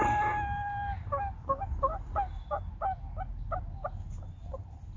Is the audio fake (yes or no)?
no